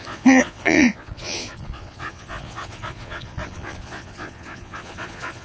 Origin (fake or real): fake